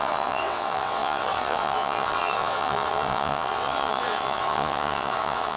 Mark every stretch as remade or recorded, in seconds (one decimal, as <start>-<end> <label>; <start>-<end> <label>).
0.0-5.6 remade